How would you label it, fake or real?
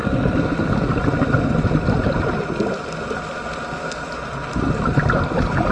real